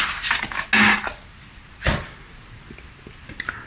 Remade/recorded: recorded